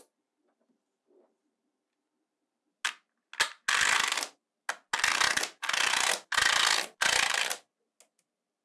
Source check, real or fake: real